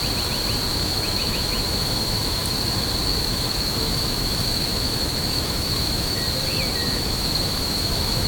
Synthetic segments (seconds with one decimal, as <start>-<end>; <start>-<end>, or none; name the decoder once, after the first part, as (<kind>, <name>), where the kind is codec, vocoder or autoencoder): 0.7-2.4 (autoencoder, DAC-VAE); 3.1-6.2; 6.8-8.3